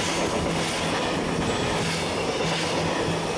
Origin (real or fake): real